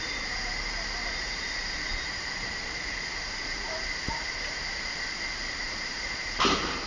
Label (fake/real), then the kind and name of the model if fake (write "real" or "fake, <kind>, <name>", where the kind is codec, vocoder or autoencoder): fake, vocoder, BigVGAN v2